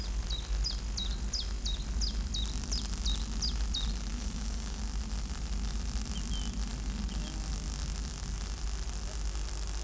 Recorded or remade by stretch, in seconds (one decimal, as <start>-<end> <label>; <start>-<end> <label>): 0.0-4.1 recorded; 4.1-4.8 remade; 4.8-9.8 recorded